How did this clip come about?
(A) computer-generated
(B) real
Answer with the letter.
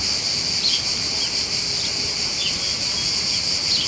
B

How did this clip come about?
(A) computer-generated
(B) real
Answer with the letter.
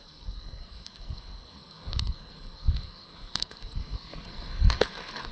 A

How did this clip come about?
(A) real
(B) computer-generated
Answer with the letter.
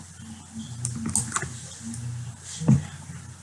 A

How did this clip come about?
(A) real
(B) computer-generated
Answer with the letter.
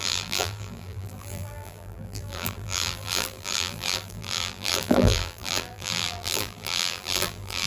B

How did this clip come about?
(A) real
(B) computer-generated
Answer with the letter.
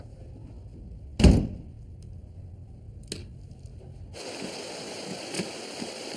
A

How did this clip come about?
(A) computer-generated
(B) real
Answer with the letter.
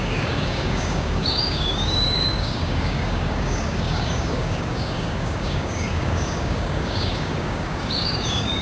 A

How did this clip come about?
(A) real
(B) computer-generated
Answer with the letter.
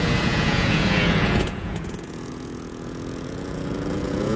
B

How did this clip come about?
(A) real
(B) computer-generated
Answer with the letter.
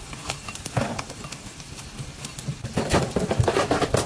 B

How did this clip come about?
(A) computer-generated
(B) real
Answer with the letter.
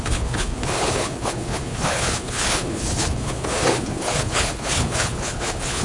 A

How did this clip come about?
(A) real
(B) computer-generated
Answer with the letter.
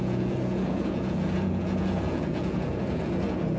B